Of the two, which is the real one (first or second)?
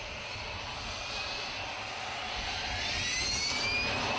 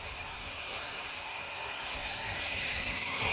first